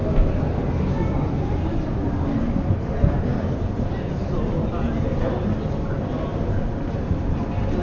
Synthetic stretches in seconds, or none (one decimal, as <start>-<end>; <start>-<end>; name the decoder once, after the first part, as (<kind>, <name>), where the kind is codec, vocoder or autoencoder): none